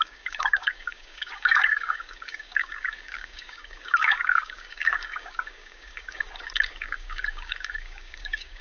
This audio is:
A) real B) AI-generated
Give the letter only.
B